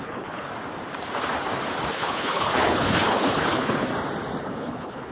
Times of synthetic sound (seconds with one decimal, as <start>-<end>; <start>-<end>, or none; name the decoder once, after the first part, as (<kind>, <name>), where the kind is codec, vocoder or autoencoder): 0.0-0.5 (codec, HILCodec); 1.9-3.9; 4.4-5.1